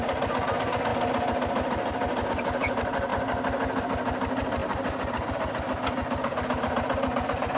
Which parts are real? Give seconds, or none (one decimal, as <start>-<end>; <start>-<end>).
0.9-2.3; 3.1-3.8; 4.6-5.3